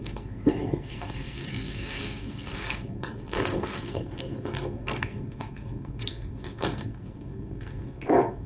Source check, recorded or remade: remade